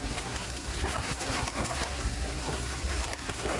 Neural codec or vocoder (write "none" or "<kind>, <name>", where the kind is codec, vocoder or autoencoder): codec, SNAC